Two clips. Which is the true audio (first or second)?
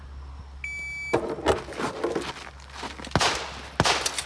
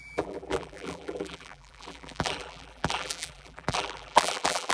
first